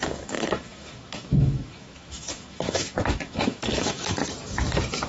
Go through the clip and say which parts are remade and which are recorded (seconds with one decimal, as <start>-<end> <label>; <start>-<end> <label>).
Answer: 0.0-4.2 remade; 4.2-5.1 recorded